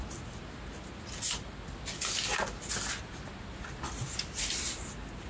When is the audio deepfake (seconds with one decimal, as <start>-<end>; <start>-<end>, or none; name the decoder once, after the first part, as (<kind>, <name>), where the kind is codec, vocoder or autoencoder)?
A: 2.7-4.8 (vocoder, BigVGAN v2)